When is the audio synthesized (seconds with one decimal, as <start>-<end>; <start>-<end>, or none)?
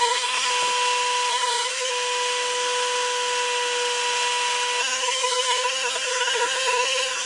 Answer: 0.0-0.5; 1.3-1.9; 4.8-7.3